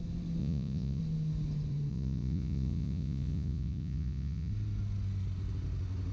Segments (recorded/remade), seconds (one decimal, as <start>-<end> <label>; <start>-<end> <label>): 0.0-0.4 recorded; 0.4-1.0 remade; 1.0-1.9 recorded; 1.9-4.5 remade; 4.5-6.1 recorded